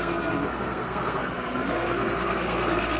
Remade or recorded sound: remade